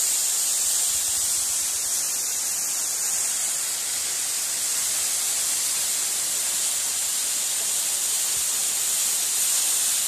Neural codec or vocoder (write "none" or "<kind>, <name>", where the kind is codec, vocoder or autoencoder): none